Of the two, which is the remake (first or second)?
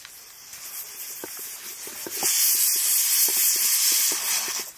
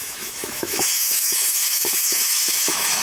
second